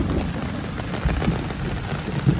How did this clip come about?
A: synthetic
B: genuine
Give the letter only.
B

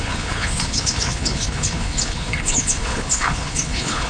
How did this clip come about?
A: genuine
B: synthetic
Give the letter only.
B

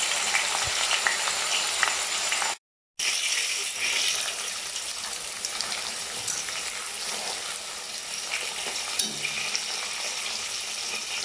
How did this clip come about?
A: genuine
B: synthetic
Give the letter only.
A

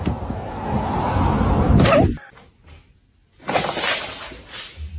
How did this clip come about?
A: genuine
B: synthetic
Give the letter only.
A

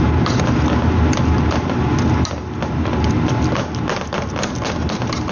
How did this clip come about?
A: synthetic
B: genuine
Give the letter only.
B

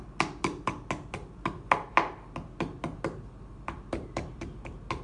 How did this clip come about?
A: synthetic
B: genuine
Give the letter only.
B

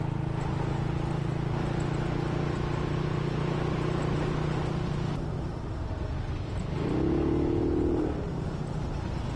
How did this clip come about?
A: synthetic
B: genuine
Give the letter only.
B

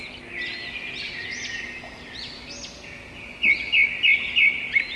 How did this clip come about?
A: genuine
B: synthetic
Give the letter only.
A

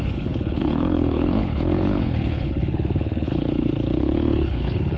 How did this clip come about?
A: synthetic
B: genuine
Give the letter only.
A